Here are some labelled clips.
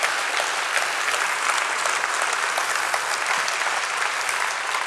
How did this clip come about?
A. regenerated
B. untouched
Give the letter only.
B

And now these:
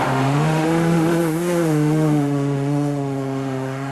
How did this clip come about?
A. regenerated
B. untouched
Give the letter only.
A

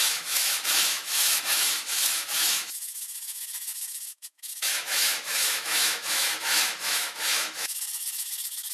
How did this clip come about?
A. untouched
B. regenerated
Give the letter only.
B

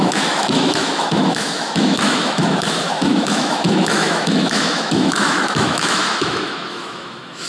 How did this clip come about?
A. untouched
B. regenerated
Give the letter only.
B